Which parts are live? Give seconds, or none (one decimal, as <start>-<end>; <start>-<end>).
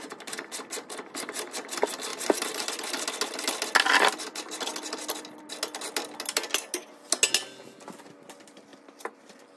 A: 0.0-2.1; 2.7-8.7